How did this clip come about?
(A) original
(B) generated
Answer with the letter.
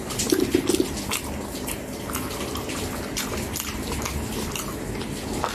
A